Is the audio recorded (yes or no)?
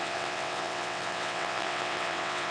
no